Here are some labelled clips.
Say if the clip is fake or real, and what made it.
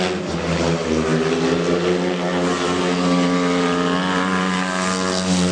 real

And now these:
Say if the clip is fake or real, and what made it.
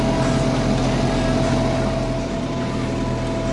real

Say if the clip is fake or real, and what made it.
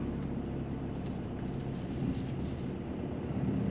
real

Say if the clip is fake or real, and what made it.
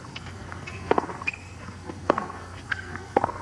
fake, codec, SNAC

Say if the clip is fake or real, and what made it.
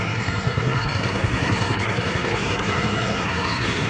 fake, codec, SNAC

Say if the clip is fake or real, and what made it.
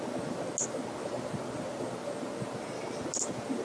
real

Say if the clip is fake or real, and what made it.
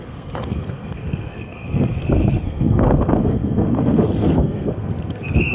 fake, codec, SNAC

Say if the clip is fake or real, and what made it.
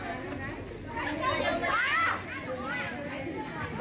real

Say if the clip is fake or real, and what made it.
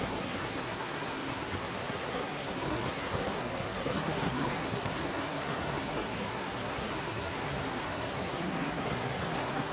fake, codec, SNAC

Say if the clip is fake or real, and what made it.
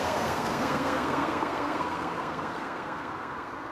fake, codec, SNAC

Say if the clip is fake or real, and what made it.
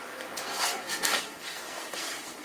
fake, codec, SNAC